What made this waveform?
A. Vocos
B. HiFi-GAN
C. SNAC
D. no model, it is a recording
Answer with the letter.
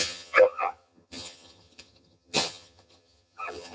B